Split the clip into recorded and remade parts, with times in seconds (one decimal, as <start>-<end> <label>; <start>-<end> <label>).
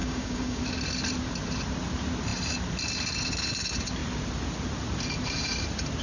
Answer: 0.0-0.6 remade; 0.6-6.0 recorded